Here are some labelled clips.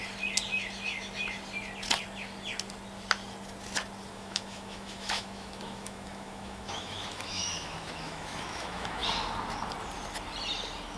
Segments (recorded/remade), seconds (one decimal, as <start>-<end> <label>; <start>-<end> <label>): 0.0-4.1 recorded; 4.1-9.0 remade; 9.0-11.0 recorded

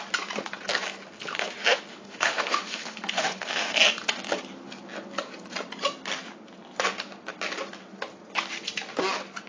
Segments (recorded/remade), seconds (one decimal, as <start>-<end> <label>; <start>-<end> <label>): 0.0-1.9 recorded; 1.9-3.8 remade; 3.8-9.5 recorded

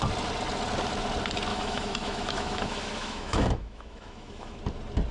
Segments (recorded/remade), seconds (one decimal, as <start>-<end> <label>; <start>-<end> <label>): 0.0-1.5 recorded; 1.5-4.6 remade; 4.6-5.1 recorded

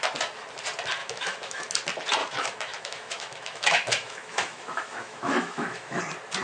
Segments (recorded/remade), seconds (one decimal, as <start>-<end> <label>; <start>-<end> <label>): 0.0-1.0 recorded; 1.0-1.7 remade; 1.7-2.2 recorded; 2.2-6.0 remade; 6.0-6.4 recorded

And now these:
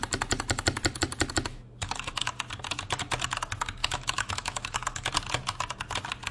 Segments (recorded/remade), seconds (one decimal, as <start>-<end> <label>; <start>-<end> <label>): 0.0-1.5 recorded; 1.5-2.3 remade; 2.3-3.8 recorded; 3.8-5.1 remade; 5.1-6.3 recorded

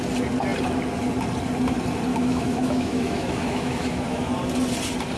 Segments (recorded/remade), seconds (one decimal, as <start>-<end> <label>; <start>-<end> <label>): 0.0-2.1 recorded; 2.1-4.3 remade; 4.3-5.2 recorded

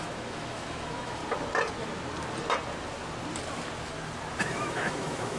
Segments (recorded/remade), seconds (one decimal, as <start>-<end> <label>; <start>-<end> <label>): 0.0-1.2 remade; 1.2-4.4 recorded; 4.4-5.4 remade